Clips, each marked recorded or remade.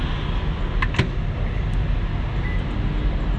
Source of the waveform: recorded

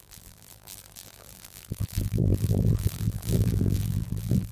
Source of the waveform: remade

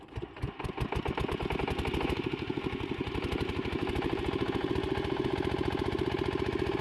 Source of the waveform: recorded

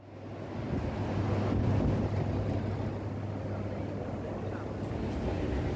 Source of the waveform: recorded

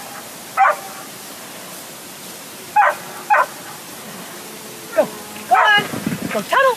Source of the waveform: recorded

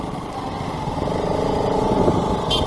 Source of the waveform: recorded